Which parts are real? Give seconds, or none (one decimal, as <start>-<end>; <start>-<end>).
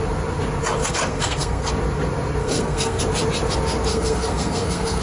0.0-0.8; 1.7-2.4; 3.0-3.9